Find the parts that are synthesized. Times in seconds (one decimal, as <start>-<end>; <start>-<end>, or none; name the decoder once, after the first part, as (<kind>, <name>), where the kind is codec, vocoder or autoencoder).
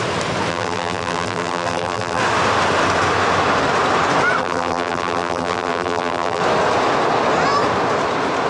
0.5-2.2 (vocoder, BigVGAN v2); 4.4-6.4